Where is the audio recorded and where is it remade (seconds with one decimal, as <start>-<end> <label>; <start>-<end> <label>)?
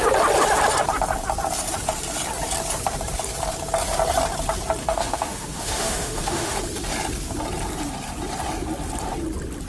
0.0-4.8 recorded; 4.8-6.6 remade; 6.6-9.7 recorded